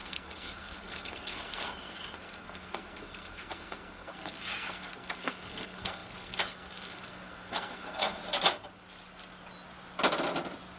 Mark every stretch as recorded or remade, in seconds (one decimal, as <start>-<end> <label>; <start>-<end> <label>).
0.0-8.2 remade; 8.2-10.8 recorded